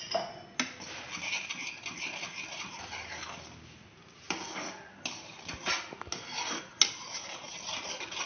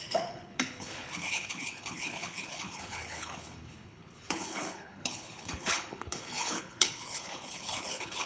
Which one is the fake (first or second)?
second